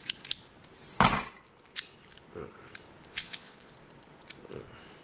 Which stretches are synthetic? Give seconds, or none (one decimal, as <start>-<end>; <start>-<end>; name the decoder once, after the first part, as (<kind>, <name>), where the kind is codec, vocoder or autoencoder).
3.1-3.7 (vocoder, Vocos)